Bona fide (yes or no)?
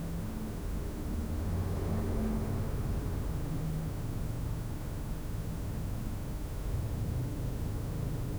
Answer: no